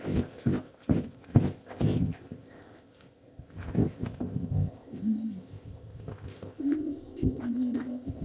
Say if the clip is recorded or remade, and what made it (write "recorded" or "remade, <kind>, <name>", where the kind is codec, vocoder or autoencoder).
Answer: remade, codec, ZipCodec